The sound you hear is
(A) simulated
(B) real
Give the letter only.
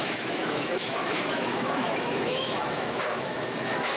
A